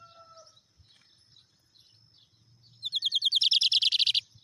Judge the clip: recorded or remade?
recorded